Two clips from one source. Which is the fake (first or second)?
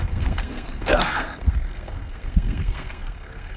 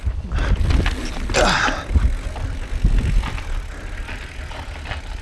first